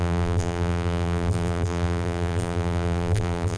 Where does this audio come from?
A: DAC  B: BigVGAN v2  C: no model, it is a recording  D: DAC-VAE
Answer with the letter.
B